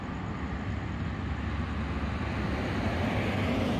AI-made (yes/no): no